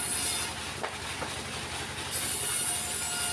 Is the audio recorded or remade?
recorded